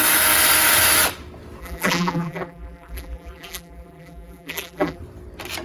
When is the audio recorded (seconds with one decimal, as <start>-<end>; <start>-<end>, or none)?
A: 0.0-1.6; 5.0-5.6

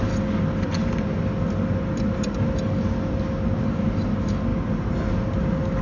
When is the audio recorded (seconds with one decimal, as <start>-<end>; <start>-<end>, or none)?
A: 0.0-4.5; 5.0-5.8

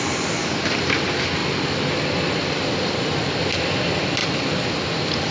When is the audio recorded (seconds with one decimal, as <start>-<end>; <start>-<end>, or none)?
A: 0.0-4.2

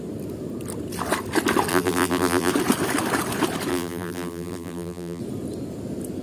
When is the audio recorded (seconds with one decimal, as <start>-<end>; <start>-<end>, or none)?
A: 0.0-1.7; 2.5-3.7; 5.2-6.2

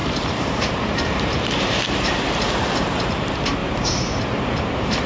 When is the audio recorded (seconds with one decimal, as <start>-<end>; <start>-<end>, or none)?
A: 3.1-3.6